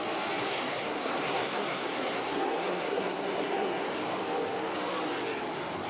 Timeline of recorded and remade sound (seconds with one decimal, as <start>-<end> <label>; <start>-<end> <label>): 0.0-0.4 recorded; 0.4-3.9 remade; 3.9-5.9 recorded